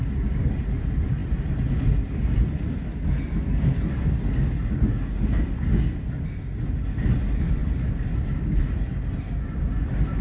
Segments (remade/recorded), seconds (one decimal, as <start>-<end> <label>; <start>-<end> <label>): 0.0-10.2 recorded